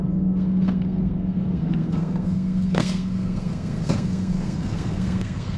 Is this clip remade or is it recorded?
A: remade